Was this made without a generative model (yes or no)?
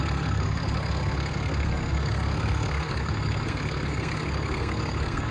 no